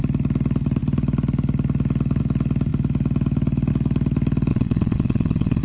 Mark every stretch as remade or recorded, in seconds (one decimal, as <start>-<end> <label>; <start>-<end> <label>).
0.0-4.5 recorded; 4.5-5.6 remade